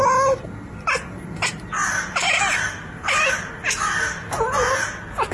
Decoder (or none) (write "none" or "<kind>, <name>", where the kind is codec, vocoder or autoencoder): none